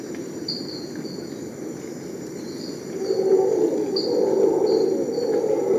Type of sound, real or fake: real